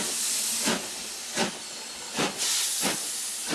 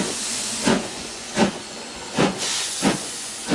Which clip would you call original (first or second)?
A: first